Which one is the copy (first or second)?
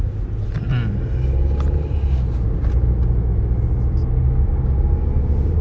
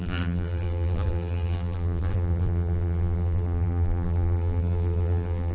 second